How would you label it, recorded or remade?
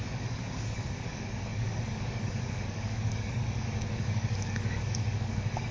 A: remade